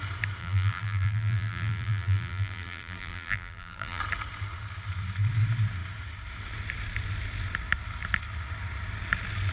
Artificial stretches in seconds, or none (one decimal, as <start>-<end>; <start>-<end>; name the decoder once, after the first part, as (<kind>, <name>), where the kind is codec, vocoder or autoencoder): 0.4-4.0 (vocoder, BigVGAN v2)